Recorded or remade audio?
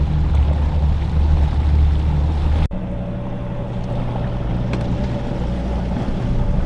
recorded